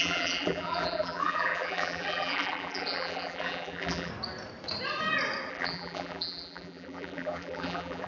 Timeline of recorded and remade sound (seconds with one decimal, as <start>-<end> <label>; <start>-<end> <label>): 0.0-4.1 remade; 4.1-5.5 recorded; 5.5-8.1 remade